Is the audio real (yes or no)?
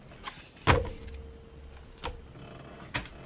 yes